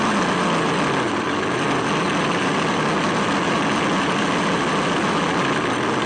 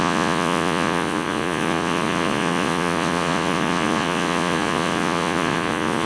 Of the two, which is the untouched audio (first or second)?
first